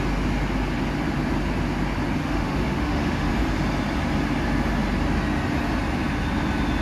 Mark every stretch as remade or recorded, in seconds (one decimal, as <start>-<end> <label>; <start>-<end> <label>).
0.0-2.2 recorded; 2.2-3.3 remade; 3.3-6.8 recorded